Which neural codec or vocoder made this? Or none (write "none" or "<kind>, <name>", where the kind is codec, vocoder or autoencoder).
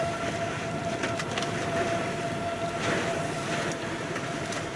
vocoder, BigVGAN v2